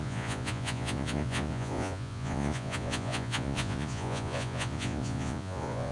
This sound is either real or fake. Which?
fake